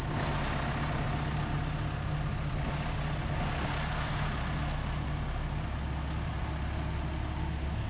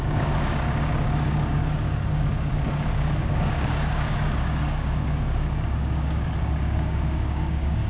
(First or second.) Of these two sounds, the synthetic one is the second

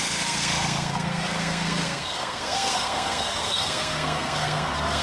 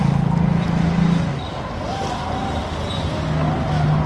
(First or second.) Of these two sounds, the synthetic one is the first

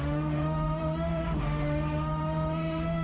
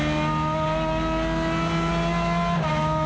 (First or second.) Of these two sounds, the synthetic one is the first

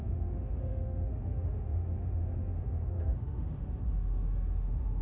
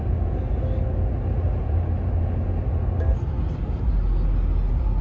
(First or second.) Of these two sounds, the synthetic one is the first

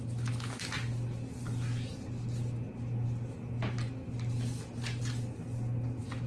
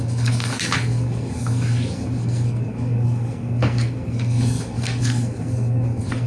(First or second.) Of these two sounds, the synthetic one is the second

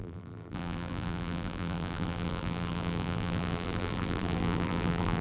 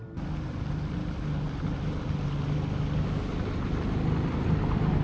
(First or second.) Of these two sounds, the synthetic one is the first